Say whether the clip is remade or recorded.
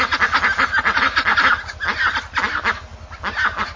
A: recorded